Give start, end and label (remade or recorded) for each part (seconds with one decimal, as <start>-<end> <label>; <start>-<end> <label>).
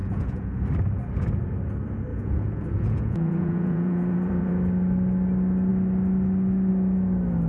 0.0-0.6 remade; 0.6-2.1 recorded; 2.1-4.5 remade; 4.5-7.5 recorded